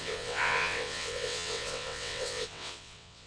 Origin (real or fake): fake